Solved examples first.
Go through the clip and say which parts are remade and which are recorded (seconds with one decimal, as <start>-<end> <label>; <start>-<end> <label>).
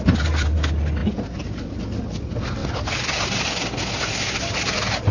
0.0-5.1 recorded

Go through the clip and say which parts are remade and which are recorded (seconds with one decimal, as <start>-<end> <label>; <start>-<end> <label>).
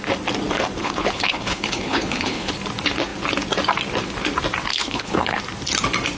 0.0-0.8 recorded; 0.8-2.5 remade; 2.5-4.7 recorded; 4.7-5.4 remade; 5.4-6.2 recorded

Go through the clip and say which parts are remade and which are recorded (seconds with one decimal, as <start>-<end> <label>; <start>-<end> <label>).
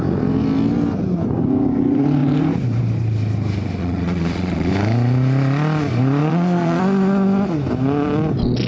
0.0-3.8 recorded; 3.8-4.7 remade; 4.7-6.2 recorded; 6.2-6.8 remade; 6.8-8.7 recorded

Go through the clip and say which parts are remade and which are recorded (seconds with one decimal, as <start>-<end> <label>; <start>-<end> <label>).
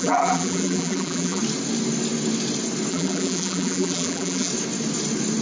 0.0-1.4 remade; 1.4-2.9 recorded; 2.9-4.5 remade; 4.5-5.4 recorded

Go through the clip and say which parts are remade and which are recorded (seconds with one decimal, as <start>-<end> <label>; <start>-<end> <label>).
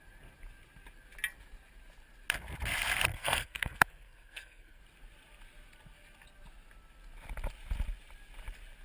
0.0-3.1 recorded; 3.1-4.8 remade; 4.8-8.8 recorded